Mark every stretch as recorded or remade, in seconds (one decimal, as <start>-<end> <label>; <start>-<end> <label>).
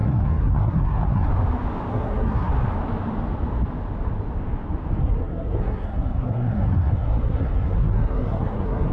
0.0-1.3 remade; 1.3-1.9 recorded; 1.9-2.5 remade; 2.5-5.0 recorded; 5.0-8.9 remade